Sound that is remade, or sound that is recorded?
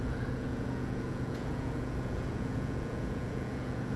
remade